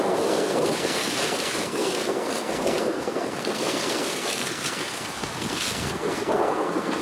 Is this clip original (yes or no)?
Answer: no